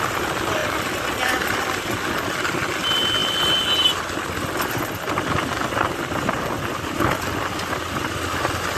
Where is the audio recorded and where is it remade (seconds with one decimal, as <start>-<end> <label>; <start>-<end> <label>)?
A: 0.0-8.8 recorded